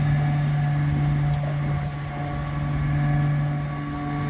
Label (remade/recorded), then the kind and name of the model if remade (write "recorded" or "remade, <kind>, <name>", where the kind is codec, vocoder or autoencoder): recorded